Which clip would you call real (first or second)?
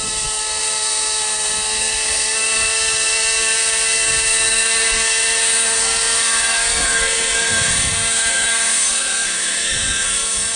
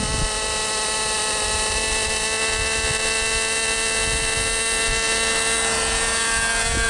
second